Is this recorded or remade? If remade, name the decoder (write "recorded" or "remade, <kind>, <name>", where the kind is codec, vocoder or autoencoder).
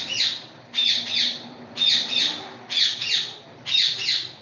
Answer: recorded